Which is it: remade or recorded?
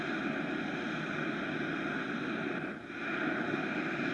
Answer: recorded